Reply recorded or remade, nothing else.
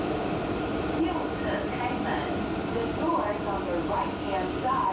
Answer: recorded